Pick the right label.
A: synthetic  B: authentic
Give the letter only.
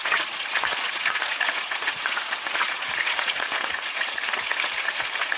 A